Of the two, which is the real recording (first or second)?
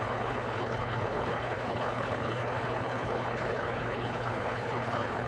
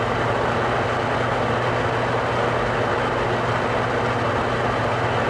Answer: second